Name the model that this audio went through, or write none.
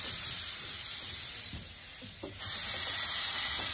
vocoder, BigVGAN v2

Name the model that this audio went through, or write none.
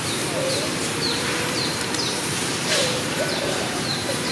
vocoder, BigVGAN v2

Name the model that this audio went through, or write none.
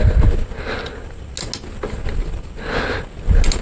none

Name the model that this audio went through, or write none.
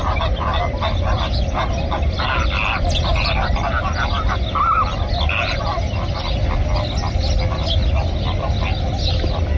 none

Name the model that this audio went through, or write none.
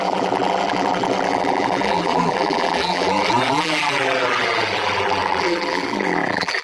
vocoder, BigVGAN v2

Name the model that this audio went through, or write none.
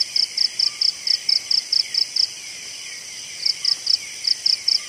vocoder, BigVGAN v2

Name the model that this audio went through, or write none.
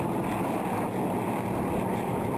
none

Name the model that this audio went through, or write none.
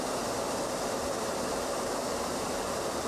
vocoder, BigVGAN v2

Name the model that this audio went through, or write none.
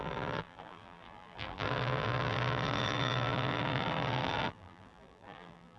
vocoder, BigVGAN v2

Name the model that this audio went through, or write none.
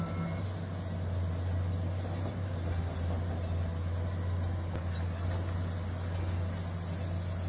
none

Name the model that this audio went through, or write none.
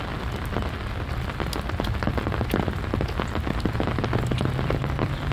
none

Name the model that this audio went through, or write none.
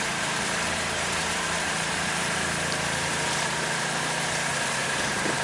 vocoder, BigVGAN v2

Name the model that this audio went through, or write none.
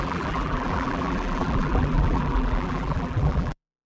vocoder, BigVGAN v2